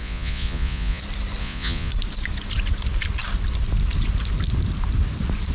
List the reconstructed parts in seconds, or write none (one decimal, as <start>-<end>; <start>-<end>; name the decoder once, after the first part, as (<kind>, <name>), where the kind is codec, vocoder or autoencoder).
0.0-1.0 (vocoder, Vocos); 1.4-1.9